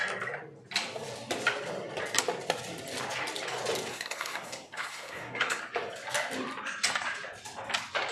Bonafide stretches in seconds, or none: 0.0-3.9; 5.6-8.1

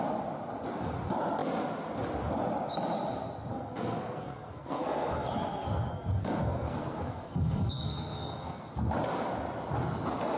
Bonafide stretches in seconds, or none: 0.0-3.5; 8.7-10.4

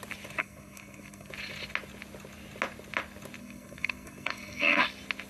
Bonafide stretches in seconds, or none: 0.0-0.4; 1.3-3.4; 4.8-5.3